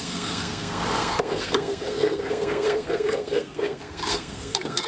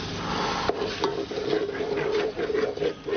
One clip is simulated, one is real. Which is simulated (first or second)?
first